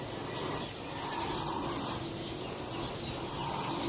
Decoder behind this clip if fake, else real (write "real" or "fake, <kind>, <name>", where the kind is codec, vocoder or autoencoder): real